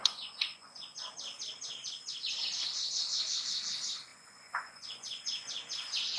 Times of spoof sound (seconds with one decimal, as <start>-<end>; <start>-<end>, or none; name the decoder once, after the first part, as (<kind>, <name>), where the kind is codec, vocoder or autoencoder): 0.0-1.1 (vocoder, Vocos); 4.1-6.2